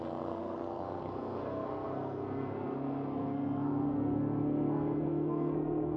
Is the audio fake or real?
fake